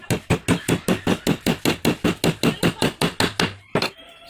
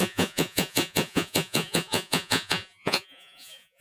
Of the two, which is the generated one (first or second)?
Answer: second